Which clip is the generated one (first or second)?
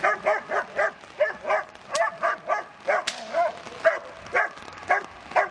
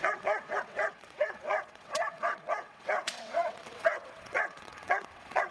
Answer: second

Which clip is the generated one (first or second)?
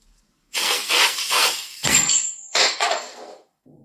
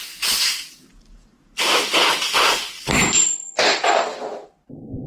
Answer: first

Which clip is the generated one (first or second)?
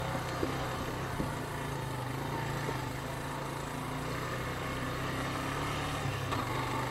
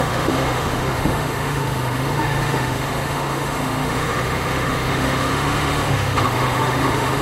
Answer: second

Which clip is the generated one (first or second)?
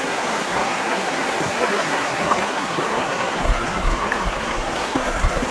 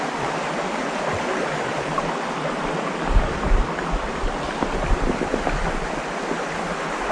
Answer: first